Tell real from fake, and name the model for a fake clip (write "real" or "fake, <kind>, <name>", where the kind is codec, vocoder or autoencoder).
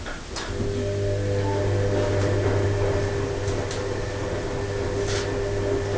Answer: real